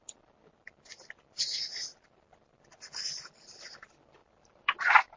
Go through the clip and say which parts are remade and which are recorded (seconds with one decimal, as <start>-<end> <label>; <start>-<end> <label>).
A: 0.0-4.2 recorded; 4.2-4.8 remade; 4.8-5.2 recorded